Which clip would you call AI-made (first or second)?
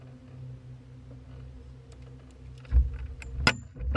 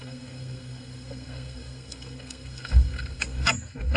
second